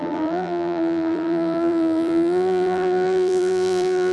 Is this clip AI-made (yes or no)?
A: yes